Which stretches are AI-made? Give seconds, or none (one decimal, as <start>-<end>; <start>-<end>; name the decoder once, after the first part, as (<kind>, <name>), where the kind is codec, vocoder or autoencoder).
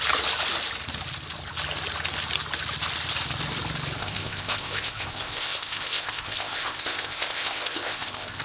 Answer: 4.0-8.4 (codec, ZipCodec)